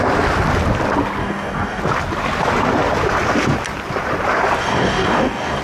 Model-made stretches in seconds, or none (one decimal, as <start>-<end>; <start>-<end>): 1.2-1.8; 4.6-5.6

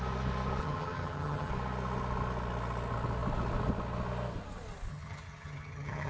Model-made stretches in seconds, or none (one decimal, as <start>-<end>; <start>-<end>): 0.6-1.5; 4.9-6.1

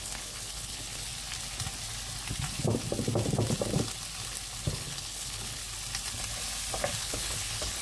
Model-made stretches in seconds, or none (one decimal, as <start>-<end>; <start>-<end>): 0.0-1.1; 4.7-5.6; 7.0-7.8

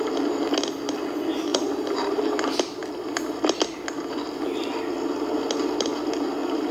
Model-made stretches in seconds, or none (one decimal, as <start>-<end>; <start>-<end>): 1.5-2.2